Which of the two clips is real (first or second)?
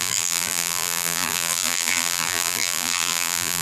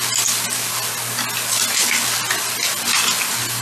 second